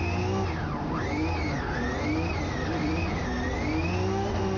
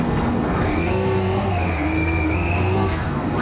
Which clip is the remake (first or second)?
second